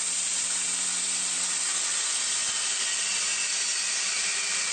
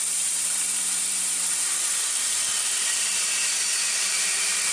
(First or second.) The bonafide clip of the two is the first